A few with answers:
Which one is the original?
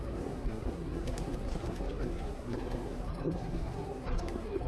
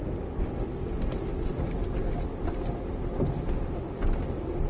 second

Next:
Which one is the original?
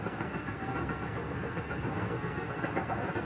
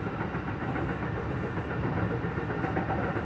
second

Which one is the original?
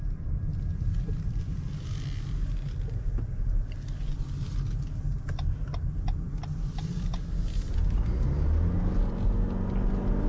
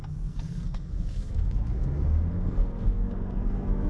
first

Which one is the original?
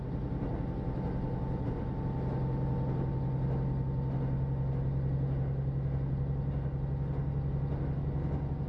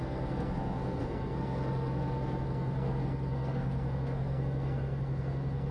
first